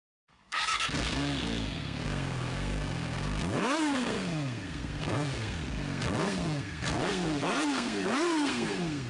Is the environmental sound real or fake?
fake